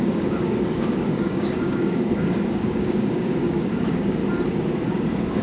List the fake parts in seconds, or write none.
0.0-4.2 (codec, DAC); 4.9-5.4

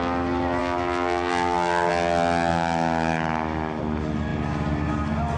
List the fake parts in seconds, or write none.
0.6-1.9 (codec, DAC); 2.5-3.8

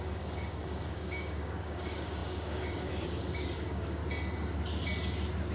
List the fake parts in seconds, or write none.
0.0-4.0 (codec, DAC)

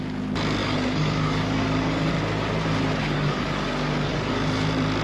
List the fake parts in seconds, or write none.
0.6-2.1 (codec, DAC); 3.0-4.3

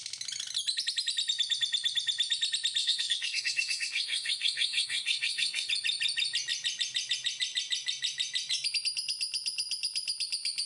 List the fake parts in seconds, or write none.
2.8-5.7 (codec, DAC)

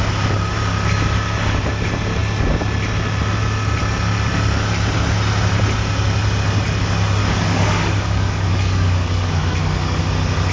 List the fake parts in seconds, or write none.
7.2-10.0 (codec, DAC)

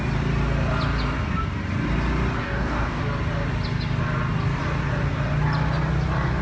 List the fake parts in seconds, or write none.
2.4-3.0 (codec, DAC)